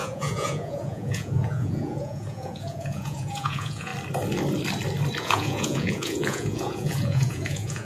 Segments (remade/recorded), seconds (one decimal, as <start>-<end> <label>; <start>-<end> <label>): 0.0-3.9 remade; 3.9-5.2 recorded; 5.2-7.8 remade